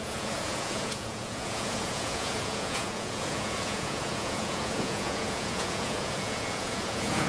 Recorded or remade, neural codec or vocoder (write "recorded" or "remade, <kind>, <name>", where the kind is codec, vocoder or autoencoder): remade, vocoder, Vocos